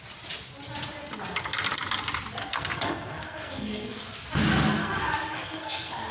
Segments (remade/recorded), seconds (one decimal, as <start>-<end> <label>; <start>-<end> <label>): 0.0-2.4 recorded; 2.4-4.1 remade; 4.1-4.8 recorded; 4.8-6.1 remade